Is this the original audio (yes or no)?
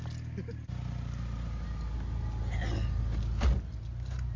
yes